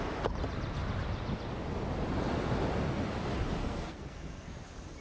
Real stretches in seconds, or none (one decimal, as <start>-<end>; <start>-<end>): 0.0-3.6; 4.5-5.0